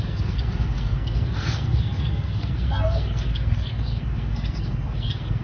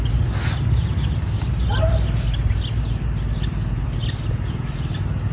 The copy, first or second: first